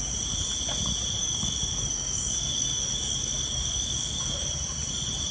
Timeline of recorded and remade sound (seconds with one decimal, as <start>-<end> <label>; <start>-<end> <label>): 0.0-1.2 recorded; 1.2-4.4 remade; 4.4-5.3 recorded